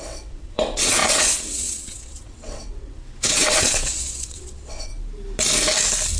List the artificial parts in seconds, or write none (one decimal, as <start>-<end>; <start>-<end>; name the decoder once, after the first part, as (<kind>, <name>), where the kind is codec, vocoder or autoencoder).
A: 0.0-4.9 (vocoder, WaveNeXt)